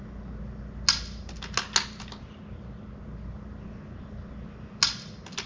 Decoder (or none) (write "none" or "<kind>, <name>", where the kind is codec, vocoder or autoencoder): none